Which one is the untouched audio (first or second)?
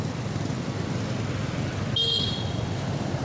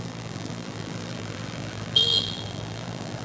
first